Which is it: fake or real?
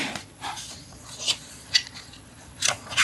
fake